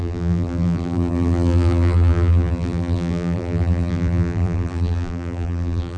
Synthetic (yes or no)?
yes